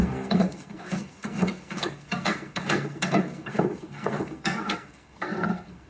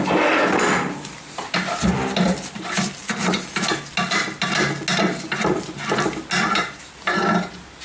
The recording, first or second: second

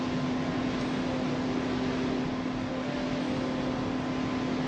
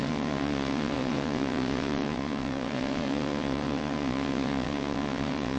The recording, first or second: first